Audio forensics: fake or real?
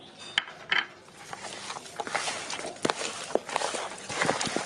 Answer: real